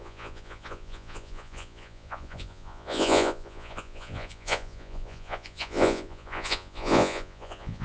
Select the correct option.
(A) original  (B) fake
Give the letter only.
B